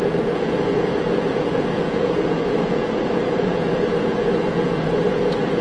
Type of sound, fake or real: fake